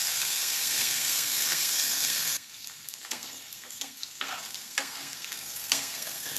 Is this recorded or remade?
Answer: remade